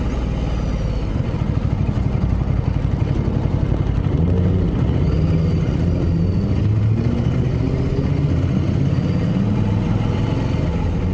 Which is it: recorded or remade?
recorded